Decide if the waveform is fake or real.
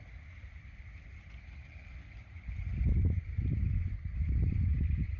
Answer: real